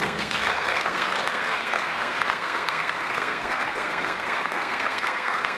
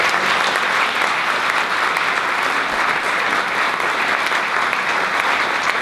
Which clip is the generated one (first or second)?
first